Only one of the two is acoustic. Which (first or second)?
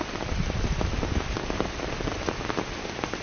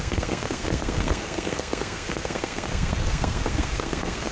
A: first